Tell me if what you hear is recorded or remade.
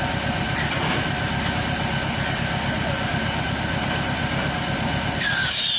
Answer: recorded